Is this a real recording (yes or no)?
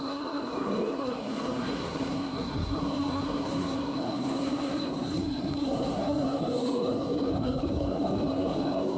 no